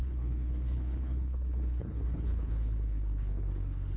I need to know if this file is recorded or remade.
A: remade